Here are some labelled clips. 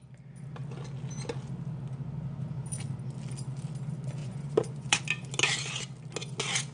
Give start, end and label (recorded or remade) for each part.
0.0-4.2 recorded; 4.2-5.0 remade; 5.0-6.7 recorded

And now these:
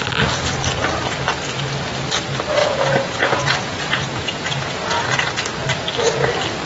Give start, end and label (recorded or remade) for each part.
0.0-2.6 recorded; 2.6-5.1 remade; 5.1-6.7 recorded

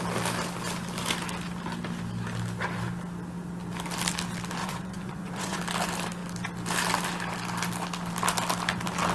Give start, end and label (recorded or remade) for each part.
0.0-4.6 recorded; 4.6-5.6 remade; 5.6-9.1 recorded